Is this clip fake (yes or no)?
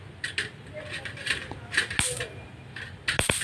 no